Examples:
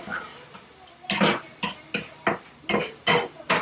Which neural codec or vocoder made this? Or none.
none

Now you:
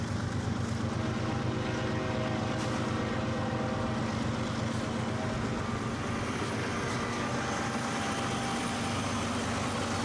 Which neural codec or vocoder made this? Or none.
none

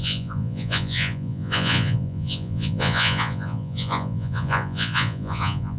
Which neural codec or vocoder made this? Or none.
vocoder, Vocos